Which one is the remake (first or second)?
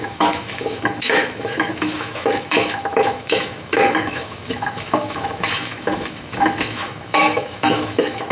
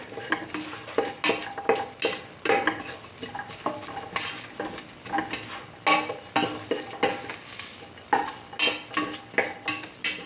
first